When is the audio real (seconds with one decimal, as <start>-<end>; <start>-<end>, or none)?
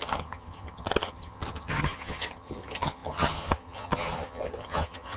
none